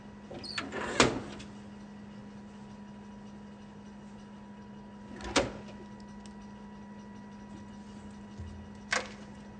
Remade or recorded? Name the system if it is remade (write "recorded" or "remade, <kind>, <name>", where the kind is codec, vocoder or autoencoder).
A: recorded